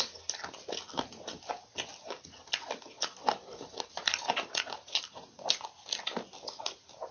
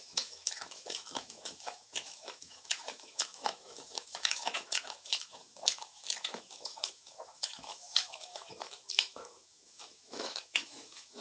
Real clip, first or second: first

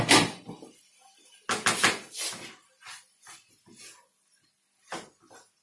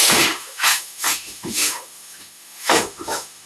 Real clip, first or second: first